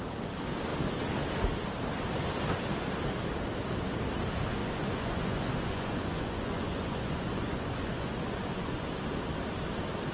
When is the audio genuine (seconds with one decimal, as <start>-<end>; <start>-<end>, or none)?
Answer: 0.0-4.6; 8.9-10.1